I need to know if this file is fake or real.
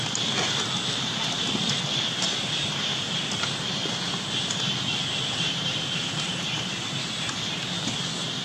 real